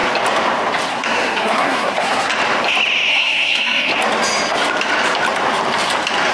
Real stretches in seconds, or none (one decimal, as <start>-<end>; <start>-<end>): 0.0-0.9; 2.3-3.1; 3.9-6.3